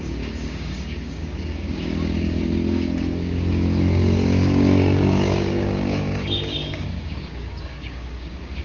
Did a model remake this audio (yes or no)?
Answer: yes